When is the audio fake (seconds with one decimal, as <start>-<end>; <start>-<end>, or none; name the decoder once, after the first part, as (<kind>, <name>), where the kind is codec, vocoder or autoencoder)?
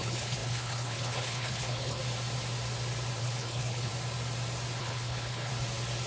0.0-2.0 (codec, HILCodec); 3.2-3.9; 4.8-5.5